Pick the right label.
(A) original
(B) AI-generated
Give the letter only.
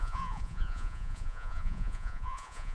B